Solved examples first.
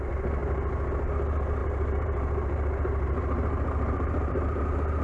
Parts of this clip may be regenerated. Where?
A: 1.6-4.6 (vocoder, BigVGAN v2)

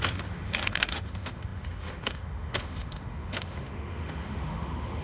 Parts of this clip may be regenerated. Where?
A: 0.0-5.0 (autoencoder, DAC-VAE)

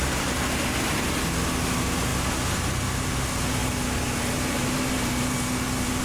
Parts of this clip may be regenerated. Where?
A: 3.6-6.0 (vocoder, BigVGAN v2)

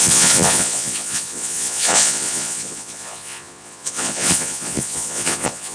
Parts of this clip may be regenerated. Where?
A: 0.0-5.7 (vocoder, Vocos)

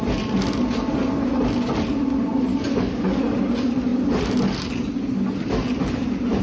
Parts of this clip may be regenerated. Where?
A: 2.5-3.2 (codec, DAC)

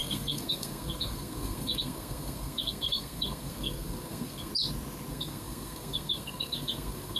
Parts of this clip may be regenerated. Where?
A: 0.0-4.5 (codec, SNAC); 5.1-7.2

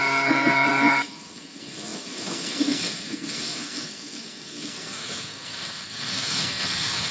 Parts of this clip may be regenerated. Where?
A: 0.0-7.1 (codec, SNAC)